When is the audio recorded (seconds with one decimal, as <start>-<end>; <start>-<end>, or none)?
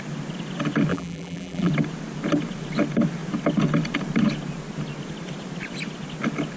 0.0-0.9; 1.7-6.6